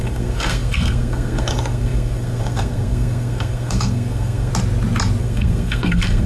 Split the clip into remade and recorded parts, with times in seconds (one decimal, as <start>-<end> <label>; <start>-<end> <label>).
0.0-4.5 remade; 4.5-5.2 recorded; 5.2-6.3 remade